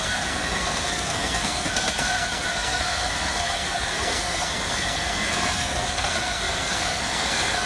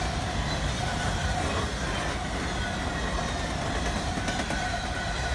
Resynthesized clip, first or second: first